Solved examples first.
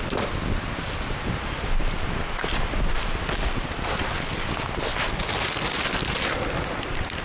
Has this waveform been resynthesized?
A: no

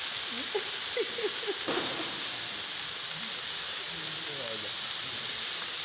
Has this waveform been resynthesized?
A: no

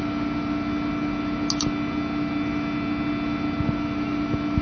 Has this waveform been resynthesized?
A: no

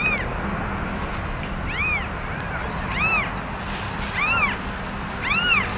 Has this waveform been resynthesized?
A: no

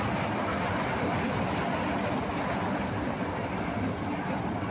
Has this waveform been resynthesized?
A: no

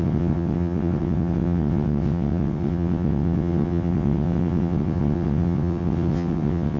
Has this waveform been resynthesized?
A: yes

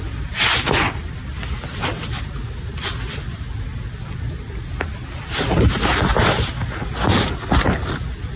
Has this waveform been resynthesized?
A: no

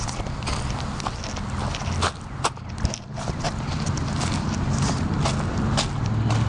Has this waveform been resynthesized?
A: no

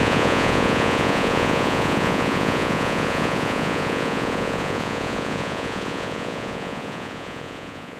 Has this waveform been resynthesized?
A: yes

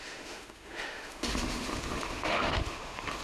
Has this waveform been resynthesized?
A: yes